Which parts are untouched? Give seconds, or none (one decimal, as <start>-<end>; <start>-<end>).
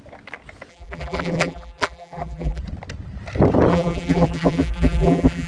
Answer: 0.0-0.7; 2.6-3.7